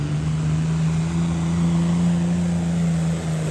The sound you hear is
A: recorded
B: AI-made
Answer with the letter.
A